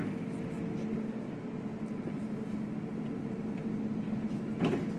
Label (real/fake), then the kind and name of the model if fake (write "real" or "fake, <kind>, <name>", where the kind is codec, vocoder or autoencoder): real